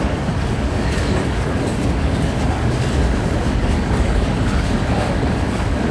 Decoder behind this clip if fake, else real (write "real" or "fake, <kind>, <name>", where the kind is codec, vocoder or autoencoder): fake, codec, DAC